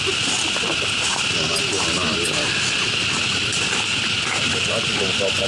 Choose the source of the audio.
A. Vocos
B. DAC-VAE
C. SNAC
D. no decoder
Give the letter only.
D